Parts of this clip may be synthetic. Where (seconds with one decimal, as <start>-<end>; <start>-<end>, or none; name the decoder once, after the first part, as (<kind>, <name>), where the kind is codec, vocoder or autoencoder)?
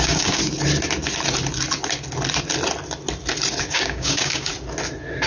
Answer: 0.0-0.4 (codec, DAC); 3.6-4.5